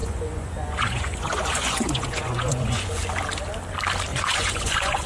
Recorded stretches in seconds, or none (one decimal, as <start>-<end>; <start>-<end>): 3.1-4.1